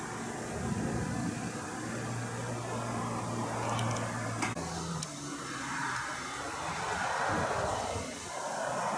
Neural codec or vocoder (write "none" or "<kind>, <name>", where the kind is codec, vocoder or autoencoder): none